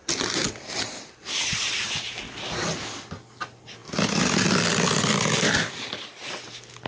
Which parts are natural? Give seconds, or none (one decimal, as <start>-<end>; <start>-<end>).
0.0-6.9